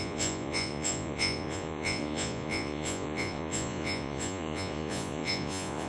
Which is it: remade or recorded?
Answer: remade